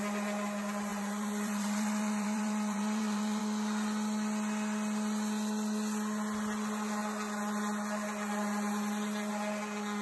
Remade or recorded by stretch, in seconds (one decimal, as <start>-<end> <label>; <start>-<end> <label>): 0.0-0.9 recorded; 0.9-3.4 remade; 3.4-10.0 recorded